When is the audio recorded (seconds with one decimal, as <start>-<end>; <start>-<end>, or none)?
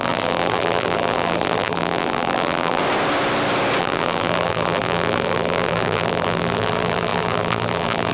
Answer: 2.8-3.8